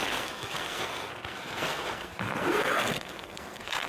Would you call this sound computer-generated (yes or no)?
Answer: yes